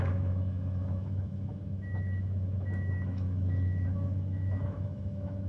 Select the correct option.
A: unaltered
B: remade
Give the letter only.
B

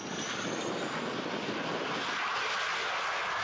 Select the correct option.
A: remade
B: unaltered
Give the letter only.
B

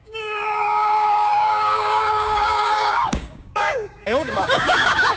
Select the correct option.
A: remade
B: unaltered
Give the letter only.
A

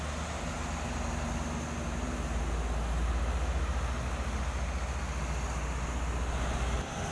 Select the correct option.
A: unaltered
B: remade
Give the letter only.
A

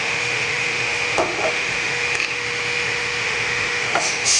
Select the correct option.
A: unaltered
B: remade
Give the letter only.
B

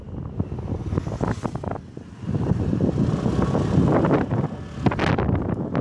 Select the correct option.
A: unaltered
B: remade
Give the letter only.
A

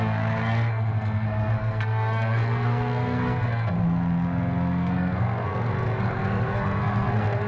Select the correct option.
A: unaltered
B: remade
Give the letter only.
B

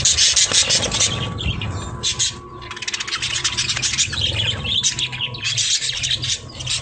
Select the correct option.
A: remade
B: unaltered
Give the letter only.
B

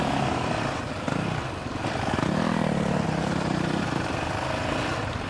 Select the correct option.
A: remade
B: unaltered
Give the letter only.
B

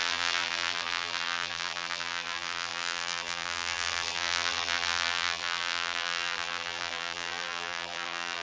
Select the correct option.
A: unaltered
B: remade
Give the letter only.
B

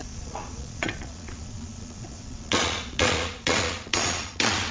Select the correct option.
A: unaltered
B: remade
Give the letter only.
B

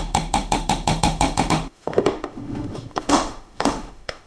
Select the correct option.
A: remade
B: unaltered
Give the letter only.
A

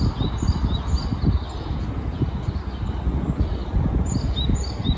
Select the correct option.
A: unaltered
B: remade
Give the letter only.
A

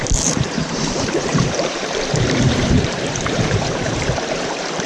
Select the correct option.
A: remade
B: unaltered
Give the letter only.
A